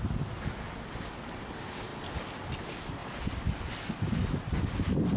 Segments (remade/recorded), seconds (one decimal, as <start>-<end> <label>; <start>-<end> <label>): 0.0-1.9 remade; 1.9-2.6 recorded; 2.6-5.2 remade